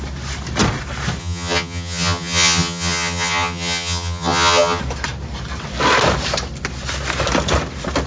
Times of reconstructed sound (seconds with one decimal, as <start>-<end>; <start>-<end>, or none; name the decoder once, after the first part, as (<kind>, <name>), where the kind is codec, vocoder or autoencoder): 1.2-4.8 (vocoder, HiFi-GAN)